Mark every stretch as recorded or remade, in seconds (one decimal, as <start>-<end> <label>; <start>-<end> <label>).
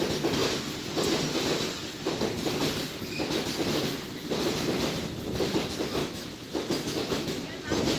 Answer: 0.0-6.0 recorded; 6.0-6.5 remade; 6.5-8.0 recorded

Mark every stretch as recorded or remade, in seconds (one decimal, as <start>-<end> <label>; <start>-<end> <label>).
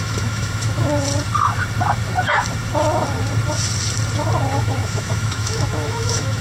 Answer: 0.0-0.9 remade; 0.9-4.6 recorded; 4.6-6.4 remade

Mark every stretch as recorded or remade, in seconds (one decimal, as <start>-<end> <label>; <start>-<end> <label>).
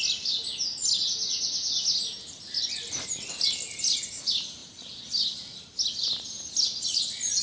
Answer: 0.0-7.4 recorded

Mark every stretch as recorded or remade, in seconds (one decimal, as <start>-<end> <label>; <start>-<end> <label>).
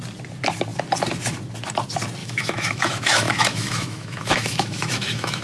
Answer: 0.0-2.2 recorded; 2.2-5.4 remade